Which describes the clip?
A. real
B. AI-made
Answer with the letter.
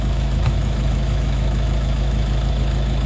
B